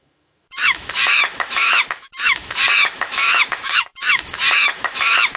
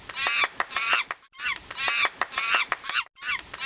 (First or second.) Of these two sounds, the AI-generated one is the first